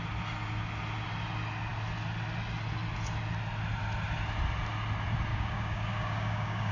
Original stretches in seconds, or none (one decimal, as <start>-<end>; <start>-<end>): 0.0-5.3